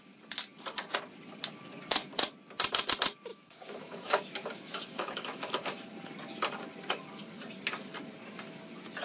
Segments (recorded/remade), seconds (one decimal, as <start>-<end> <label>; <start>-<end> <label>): 0.0-3.3 recorded; 3.3-5.5 remade; 5.5-9.0 recorded